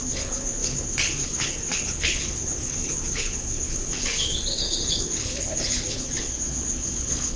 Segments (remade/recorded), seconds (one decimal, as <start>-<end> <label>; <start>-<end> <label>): 0.0-7.4 remade